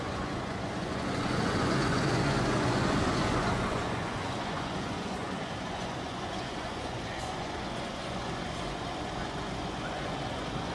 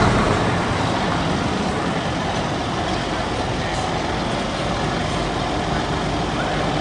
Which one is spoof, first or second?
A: first